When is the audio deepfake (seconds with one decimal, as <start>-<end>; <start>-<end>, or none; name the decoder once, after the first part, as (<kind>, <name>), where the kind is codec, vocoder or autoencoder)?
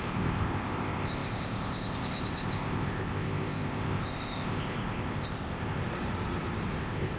0.0-5.8 (codec, ZipCodec); 6.8-7.2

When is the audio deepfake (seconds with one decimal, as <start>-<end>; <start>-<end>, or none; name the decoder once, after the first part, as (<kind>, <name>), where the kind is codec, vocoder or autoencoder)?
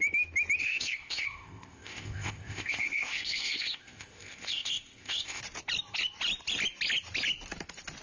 0.6-5.4 (codec, ZipCodec)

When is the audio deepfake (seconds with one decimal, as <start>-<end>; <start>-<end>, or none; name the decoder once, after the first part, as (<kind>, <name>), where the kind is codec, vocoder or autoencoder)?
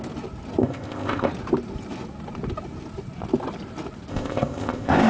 0.6-1.3 (codec, ZipCodec); 4.1-5.1